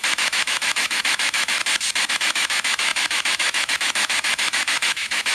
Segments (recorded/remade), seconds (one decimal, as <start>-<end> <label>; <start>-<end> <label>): 0.0-1.6 remade; 1.6-2.1 recorded; 2.1-5.3 remade